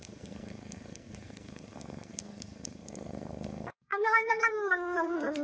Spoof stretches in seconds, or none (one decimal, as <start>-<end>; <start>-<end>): 0.0-5.4